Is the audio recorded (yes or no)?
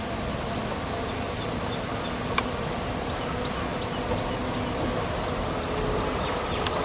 yes